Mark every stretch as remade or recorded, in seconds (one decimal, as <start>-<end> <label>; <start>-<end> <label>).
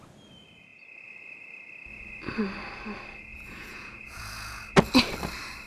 0.0-3.3 recorded; 3.3-4.6 remade; 4.6-5.7 recorded